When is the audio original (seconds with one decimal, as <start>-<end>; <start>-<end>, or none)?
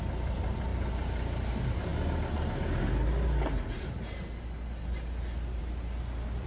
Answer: 0.0-6.5